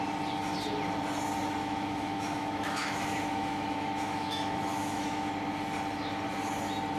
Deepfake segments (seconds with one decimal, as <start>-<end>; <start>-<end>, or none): 1.6-5.3